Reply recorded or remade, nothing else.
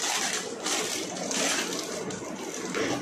recorded